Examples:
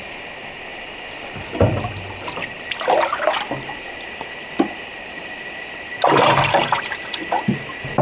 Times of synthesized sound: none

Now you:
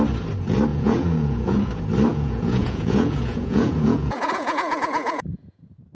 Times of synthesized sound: 0.7-1.7 (vocoder, Vocos); 2.1-5.9

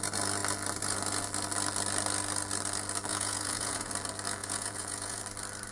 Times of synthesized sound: 3.1-3.9 (vocoder, Vocos); 4.4-5.2

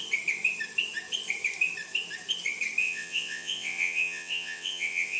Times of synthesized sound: 2.8-5.2 (vocoder, WaveNeXt)

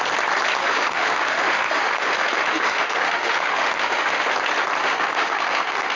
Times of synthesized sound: 0.6-4.2 (autoencoder, DAC-VAE); 4.8-6.0